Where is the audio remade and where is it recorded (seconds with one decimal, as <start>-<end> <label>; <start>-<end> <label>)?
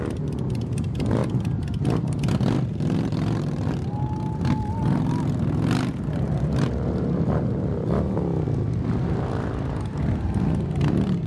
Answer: 0.0-11.3 recorded